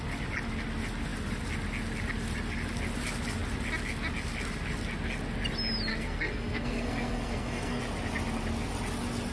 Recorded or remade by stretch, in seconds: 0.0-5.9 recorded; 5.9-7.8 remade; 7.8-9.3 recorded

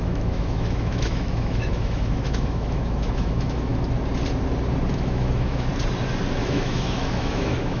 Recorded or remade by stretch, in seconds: 0.0-3.7 remade; 3.7-4.9 recorded; 4.9-5.7 remade; 5.7-6.4 recorded; 6.4-7.8 remade

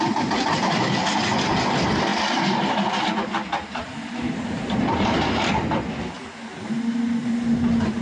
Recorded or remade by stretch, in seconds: 0.0-3.8 recorded; 3.8-5.5 remade; 5.5-7.2 recorded; 7.2-8.0 remade

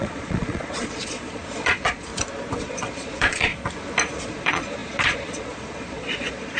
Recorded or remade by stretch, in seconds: 0.0-2.1 remade; 2.1-2.6 recorded; 2.6-3.5 remade; 3.5-4.2 recorded; 4.2-6.6 remade

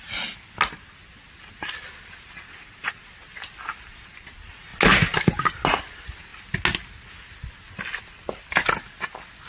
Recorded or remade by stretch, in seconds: 0.0-9.5 recorded

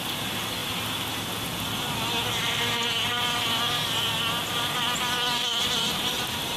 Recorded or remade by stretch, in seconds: 0.0-5.6 recorded; 5.6-6.6 remade